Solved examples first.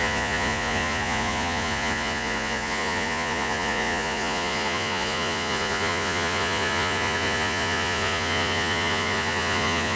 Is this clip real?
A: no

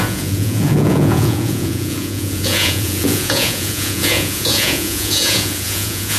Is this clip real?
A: no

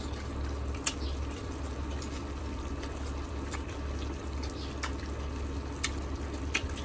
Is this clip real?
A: yes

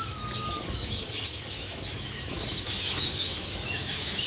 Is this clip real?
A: no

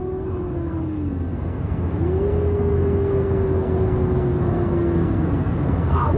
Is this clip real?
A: no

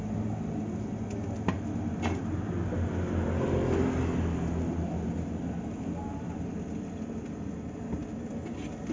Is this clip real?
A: yes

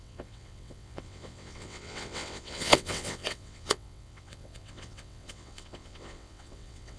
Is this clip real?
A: no